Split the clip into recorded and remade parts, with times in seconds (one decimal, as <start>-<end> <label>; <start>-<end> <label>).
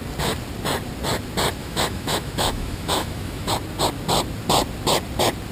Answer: 0.0-1.6 recorded; 1.6-3.5 remade; 3.5-5.5 recorded